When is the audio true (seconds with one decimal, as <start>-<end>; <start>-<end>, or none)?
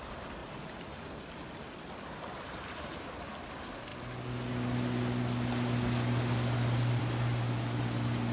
0.0-0.4; 1.2-8.3